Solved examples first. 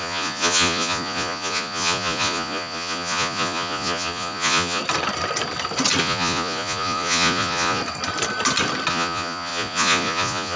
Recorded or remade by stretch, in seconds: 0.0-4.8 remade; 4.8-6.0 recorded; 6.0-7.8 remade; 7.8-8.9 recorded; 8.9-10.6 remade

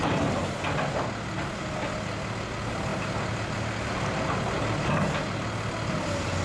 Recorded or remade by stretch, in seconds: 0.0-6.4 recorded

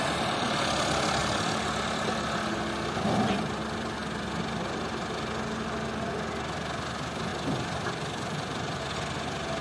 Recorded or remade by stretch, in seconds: 0.0-1.2 recorded; 1.2-2.1 remade; 2.1-4.0 recorded; 4.0-4.8 remade; 4.8-7.3 recorded; 7.3-8.8 remade; 8.8-9.6 recorded